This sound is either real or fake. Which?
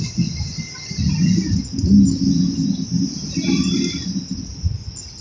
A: real